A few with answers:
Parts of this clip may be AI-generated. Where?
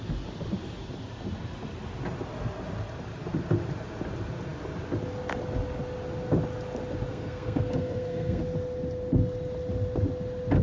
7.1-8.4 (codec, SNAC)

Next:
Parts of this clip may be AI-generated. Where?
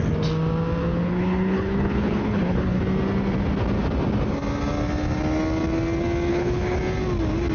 0.8-2.8 (codec, HILCodec); 6.3-6.8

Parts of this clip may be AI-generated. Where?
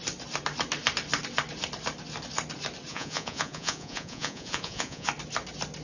2.9-5.1 (vocoder, Vocos)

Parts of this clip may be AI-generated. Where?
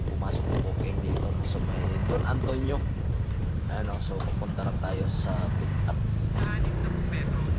2.0-5.9 (vocoder, BigVGAN v2)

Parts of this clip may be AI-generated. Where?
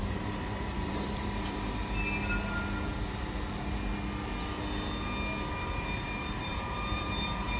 0.0-1.8 (vocoder, BigVGAN v2); 5.5-7.6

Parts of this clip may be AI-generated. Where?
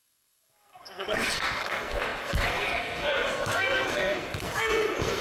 0.0-5.2 (codec, SNAC)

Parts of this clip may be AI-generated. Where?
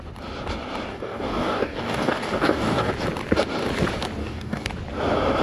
0.9-2.9 (codec, DAC); 4.2-4.7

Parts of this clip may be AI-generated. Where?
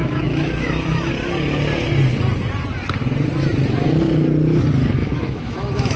0.0-1.1 (autoencoder, DAC-VAE); 5.0-6.0